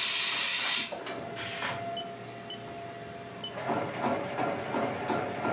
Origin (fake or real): real